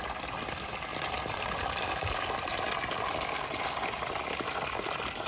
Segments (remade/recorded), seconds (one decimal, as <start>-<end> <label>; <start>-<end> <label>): 0.0-5.3 recorded